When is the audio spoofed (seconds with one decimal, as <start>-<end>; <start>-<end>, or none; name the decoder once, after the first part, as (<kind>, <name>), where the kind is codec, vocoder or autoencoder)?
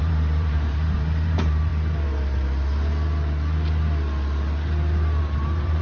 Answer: 0.0-1.7 (vocoder, BigVGAN v2); 5.2-5.8